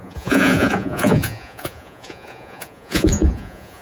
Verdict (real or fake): fake